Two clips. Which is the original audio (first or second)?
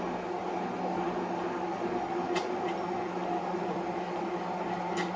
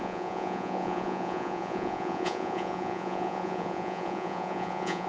first